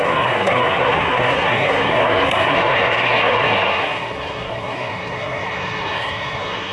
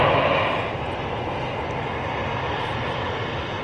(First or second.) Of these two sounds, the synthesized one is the first